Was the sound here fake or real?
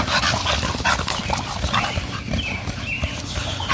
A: real